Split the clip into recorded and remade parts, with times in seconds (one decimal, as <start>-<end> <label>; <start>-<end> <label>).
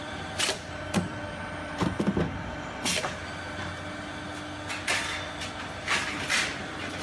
0.0-2.9 remade; 2.9-6.4 recorded; 6.4-7.0 remade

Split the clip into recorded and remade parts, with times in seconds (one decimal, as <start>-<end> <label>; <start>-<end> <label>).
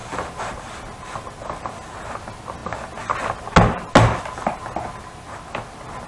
0.0-6.1 recorded